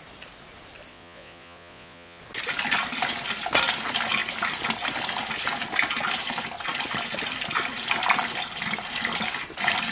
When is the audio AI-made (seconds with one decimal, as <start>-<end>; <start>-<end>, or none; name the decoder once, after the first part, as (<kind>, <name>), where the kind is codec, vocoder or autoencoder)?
0.9-2.2 (vocoder, Vocos)